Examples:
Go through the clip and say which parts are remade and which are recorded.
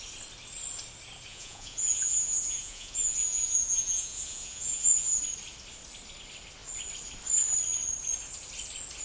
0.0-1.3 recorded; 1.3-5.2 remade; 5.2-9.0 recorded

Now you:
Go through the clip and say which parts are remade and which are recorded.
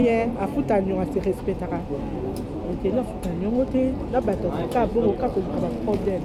0.0-6.2 recorded